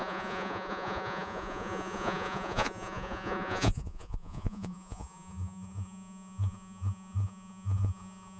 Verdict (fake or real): fake